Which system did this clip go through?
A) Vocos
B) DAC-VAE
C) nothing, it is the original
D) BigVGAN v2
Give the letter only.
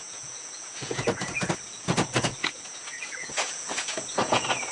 A